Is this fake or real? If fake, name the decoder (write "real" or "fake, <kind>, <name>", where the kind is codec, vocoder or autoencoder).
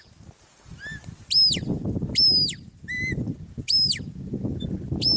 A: real